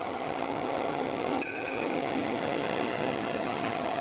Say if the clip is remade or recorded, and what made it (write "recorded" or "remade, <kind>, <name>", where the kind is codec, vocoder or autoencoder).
remade, vocoder, HiFi-GAN